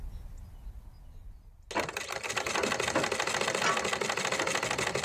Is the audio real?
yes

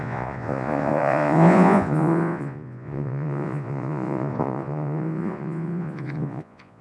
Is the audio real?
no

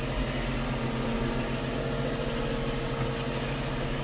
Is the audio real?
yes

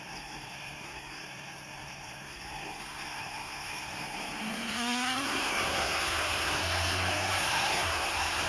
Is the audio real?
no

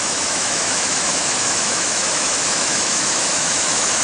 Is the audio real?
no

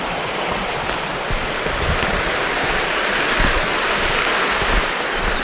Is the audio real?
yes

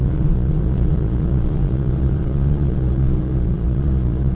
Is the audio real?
no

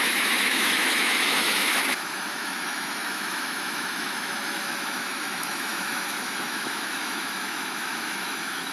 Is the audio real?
no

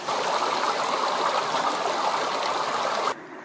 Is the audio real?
yes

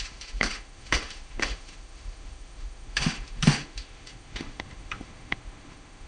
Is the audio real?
no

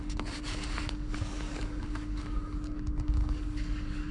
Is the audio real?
no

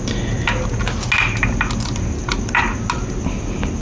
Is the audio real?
yes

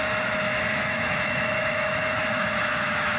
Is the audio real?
no